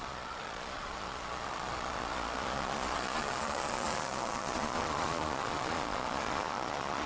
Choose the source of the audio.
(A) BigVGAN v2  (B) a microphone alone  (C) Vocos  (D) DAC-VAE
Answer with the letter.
C